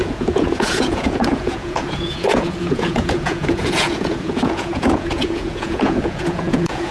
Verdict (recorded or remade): remade